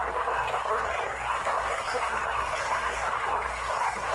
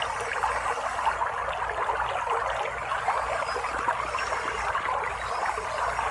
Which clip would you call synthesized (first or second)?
first